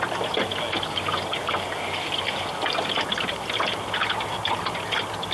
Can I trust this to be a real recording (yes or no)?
yes